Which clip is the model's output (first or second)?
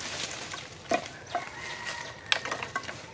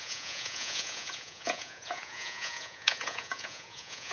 second